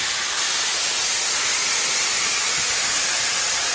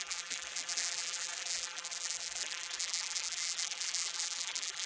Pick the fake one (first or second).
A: second